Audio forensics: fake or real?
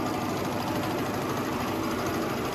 real